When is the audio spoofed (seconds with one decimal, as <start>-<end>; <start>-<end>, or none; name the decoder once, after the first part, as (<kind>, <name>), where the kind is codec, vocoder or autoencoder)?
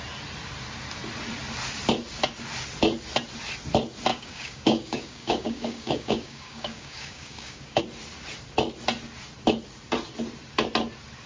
4.1-7.8 (codec, DAC)